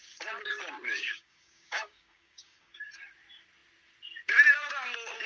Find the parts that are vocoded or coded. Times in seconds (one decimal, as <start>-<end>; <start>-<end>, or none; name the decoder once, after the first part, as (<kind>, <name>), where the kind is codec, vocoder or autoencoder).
1.1-2.9 (codec, DAC)